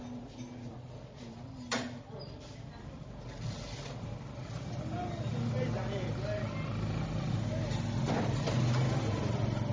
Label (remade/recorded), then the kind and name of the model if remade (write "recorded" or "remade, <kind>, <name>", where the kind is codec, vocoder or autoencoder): recorded